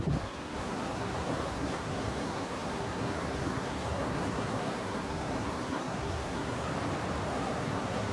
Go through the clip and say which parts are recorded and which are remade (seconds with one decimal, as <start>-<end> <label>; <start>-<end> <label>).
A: 0.0-6.7 remade; 6.7-7.3 recorded; 7.3-8.1 remade